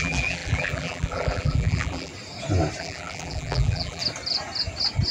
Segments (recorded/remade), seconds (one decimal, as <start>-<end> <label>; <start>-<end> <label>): 0.0-2.1 remade; 2.1-2.8 recorded; 2.8-4.0 remade; 4.0-5.1 recorded